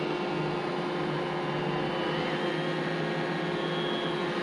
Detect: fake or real real